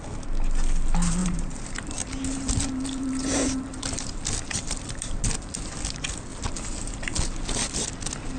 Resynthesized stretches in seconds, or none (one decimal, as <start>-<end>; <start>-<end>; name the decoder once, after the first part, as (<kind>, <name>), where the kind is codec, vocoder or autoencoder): 1.2-5.6 (vocoder, BigVGAN v2); 6.3-7.2